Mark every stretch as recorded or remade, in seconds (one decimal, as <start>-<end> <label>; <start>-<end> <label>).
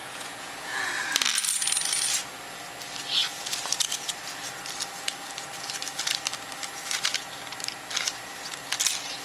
0.0-0.9 remade; 0.9-9.2 recorded